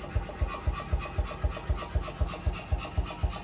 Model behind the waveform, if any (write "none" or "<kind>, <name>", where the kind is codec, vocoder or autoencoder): none